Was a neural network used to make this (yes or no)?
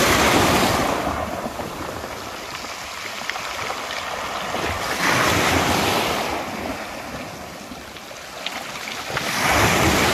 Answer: no